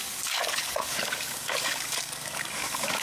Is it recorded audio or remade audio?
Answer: remade